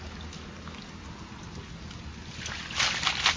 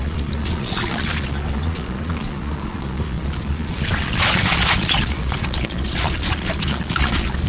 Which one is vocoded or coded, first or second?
second